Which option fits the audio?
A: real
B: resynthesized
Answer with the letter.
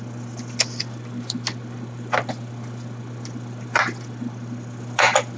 A